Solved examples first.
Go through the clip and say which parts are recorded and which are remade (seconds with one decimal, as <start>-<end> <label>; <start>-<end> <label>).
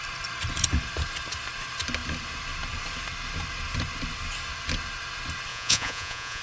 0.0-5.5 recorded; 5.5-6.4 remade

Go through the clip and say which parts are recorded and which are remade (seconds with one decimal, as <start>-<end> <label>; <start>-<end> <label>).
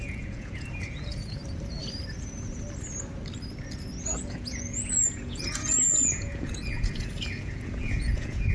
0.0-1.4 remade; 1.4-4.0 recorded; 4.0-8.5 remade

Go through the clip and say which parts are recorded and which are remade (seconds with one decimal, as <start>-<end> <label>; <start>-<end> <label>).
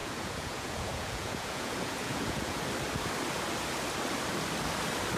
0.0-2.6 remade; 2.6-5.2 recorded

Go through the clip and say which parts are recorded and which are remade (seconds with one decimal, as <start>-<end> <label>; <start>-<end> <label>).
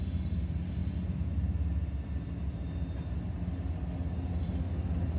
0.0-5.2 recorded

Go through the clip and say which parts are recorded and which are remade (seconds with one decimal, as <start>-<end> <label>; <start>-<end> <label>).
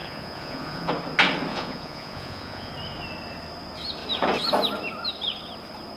0.0-0.9 remade; 0.9-1.5 recorded; 1.5-2.7 remade; 2.7-6.0 recorded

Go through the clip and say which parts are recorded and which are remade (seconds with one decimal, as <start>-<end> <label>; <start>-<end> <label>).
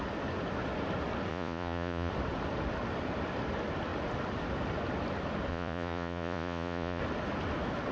0.0-1.3 recorded; 1.3-2.1 remade; 2.1-5.5 recorded; 5.5-7.0 remade; 7.0-7.9 recorded